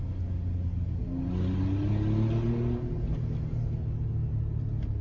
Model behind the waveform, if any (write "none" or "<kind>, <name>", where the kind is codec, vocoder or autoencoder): none